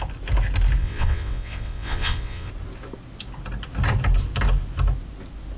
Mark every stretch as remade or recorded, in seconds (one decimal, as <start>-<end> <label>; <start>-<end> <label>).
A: 0.0-0.8 recorded; 0.8-2.5 remade; 2.5-5.6 recorded